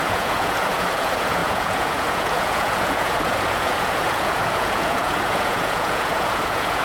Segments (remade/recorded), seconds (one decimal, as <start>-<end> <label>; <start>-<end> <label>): 0.0-6.8 remade